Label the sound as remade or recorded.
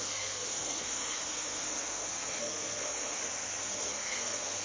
remade